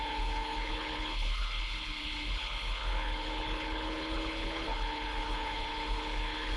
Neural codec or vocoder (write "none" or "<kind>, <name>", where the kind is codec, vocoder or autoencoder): codec, HILCodec